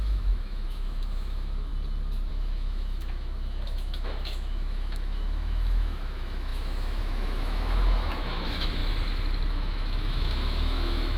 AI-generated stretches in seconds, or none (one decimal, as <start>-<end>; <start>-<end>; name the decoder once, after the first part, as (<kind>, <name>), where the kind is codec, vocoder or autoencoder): 0.0-1.7 (autoencoder, DAC-VAE); 2.3-8.8; 9.5-11.2